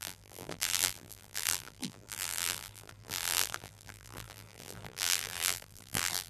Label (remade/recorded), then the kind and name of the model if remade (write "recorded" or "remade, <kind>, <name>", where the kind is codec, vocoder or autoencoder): remade, vocoder, BigVGAN v2